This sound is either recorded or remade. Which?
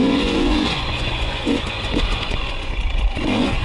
remade